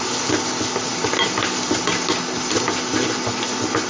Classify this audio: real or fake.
real